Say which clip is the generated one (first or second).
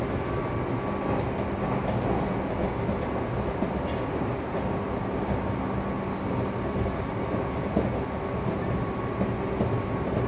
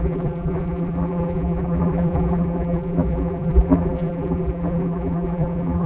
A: second